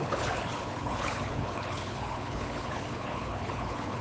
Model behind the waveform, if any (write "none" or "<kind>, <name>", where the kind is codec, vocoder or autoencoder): codec, HILCodec